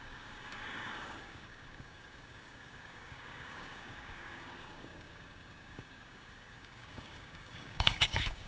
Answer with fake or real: fake